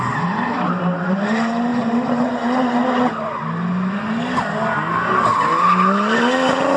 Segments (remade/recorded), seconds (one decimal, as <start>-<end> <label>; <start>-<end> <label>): 0.0-6.8 recorded

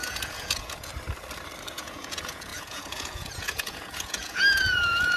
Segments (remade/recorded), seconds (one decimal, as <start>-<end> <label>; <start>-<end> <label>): 0.0-0.9 remade; 0.9-1.7 recorded; 1.7-5.2 remade

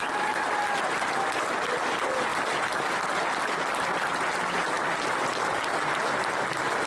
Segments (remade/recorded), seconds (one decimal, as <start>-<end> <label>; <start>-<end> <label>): 0.0-6.9 recorded

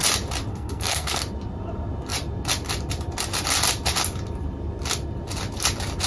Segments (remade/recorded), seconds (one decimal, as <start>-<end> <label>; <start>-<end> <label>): 0.0-0.5 recorded; 0.5-1.2 remade; 1.2-6.1 recorded

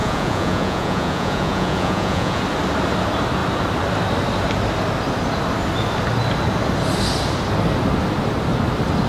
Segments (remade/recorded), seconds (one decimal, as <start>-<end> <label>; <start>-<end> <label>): 0.0-2.4 remade; 2.4-9.1 recorded